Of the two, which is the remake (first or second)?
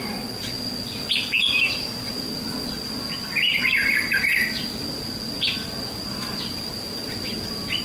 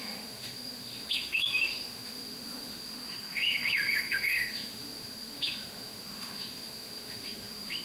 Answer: second